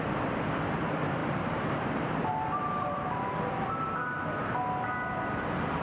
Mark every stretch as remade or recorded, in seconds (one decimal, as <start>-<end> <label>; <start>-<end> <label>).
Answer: 0.0-1.2 recorded; 1.2-3.7 remade; 3.7-5.8 recorded